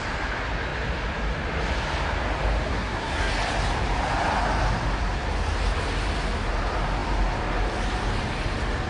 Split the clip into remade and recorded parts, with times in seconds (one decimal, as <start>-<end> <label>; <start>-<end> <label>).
0.0-2.7 recorded; 2.7-3.3 remade; 3.3-8.9 recorded

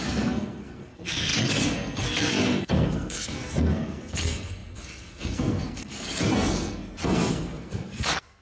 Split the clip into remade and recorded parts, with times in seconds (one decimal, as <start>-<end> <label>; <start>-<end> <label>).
0.0-8.4 remade

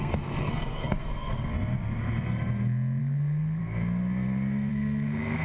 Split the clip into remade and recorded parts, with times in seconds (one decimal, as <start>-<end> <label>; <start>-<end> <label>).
0.0-1.5 remade; 1.5-3.0 recorded; 3.0-3.6 remade; 3.6-4.7 recorded; 4.7-5.4 remade

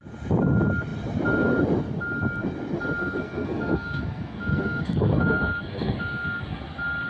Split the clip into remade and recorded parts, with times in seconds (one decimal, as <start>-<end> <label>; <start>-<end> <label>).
0.0-3.0 recorded; 3.0-6.6 remade; 6.6-7.1 recorded

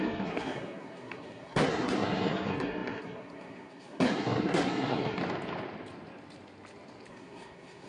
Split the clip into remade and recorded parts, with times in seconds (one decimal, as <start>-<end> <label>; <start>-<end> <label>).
0.0-5.2 remade; 5.2-7.1 recorded; 7.1-7.9 remade

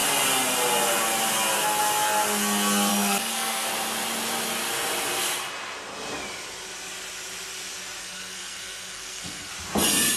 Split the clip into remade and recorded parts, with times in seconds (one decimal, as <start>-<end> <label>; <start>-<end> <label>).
0.0-2.9 recorded; 2.9-3.7 remade; 3.7-8.0 recorded; 8.0-9.5 remade; 9.5-10.2 recorded